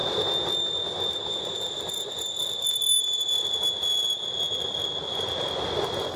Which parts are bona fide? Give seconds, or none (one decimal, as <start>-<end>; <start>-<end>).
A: 0.0-6.2